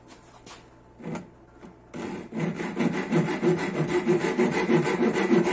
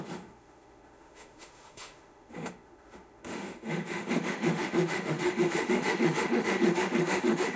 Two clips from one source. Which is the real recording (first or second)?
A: first